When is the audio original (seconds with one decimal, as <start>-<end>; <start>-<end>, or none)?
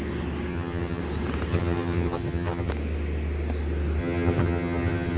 0.0-0.5; 1.0-1.5; 2.7-4.0